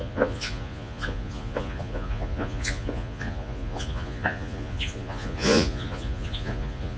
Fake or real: fake